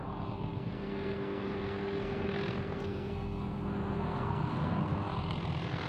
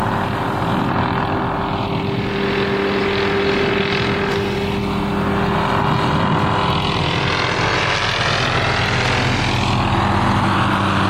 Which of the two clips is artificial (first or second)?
first